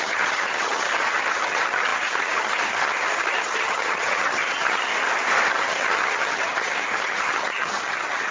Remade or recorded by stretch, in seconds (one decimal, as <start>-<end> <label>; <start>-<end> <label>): 0.0-4.9 remade; 4.9-5.5 recorded; 5.5-8.3 remade